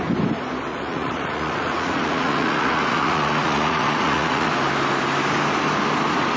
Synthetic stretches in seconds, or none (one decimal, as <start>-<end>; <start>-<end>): 0.7-4.5